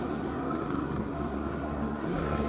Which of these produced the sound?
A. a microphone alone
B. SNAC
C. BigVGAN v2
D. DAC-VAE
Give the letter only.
B